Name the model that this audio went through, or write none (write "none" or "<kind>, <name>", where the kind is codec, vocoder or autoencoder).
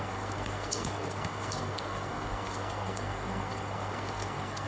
codec, SNAC